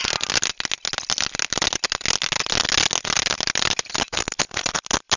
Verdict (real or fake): real